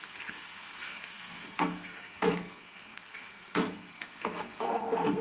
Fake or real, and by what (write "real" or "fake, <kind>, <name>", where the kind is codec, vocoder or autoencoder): fake, codec, SNAC